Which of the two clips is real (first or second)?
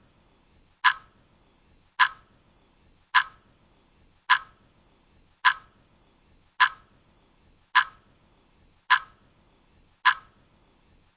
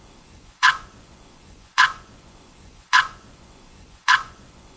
first